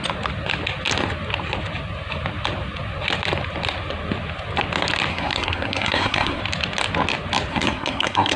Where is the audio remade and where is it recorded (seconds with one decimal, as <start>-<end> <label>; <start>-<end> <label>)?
0.0-5.1 recorded; 5.1-6.4 remade; 6.4-7.5 recorded; 7.5-8.4 remade